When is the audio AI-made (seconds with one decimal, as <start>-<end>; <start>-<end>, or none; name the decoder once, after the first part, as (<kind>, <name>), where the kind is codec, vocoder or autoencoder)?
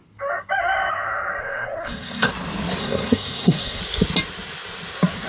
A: 1.4-2.3 (codec, SNAC); 2.8-3.8